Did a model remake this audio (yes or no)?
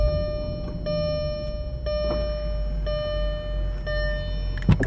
no